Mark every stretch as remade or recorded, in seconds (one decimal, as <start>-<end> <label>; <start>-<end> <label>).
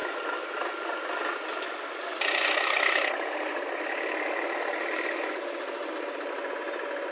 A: 0.0-7.1 recorded